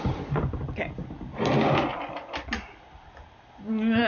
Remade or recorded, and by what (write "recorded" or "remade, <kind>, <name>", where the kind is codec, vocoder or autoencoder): recorded